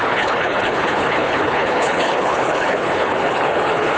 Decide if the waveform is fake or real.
fake